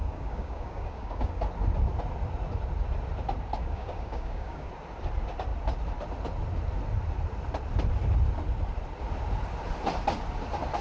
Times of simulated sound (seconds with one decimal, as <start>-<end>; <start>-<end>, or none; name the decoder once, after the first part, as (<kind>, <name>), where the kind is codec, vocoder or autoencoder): 0.0-1.4 (codec, DAC); 3.6-4.7

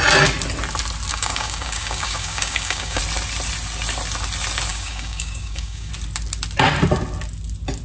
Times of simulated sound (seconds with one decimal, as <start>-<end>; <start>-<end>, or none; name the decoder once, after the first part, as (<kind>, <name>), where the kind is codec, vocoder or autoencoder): 1.1-3.0 (codec, DAC); 4.7-5.9

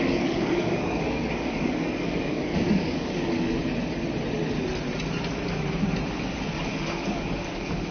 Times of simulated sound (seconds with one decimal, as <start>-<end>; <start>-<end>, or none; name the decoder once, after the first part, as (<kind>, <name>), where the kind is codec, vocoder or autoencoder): 0.0-3.6 (codec, DAC); 6.6-7.9

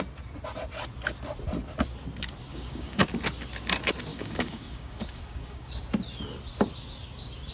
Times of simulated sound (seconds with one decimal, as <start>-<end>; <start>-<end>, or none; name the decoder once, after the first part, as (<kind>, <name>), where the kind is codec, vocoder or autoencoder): 2.5-3.0 (codec, DAC); 4.1-5.7

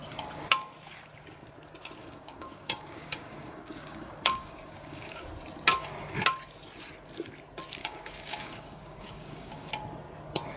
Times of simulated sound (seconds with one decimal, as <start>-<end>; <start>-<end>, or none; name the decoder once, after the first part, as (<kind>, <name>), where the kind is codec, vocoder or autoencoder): 2.0-5.2 (codec, DAC); 7.8-9.7

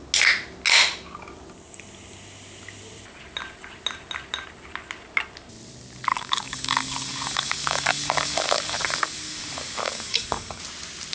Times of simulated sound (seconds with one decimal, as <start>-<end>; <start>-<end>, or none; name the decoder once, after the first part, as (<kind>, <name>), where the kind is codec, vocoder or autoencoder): 6.1-10.6 (codec, DAC)